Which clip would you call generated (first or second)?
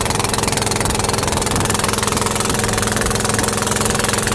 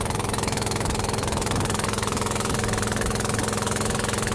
second